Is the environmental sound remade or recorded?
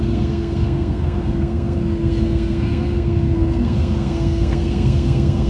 remade